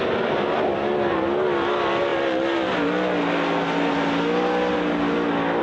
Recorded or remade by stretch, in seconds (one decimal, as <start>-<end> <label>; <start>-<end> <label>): 0.0-5.6 recorded